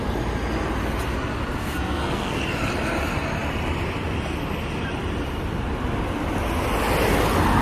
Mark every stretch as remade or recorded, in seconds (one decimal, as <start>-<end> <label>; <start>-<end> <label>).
0.0-1.6 recorded; 1.6-2.4 remade; 2.4-7.6 recorded